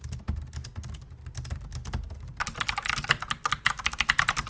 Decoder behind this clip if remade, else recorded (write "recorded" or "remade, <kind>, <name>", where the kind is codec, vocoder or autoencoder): recorded